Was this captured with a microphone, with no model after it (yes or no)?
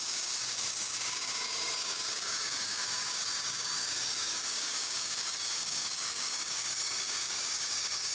no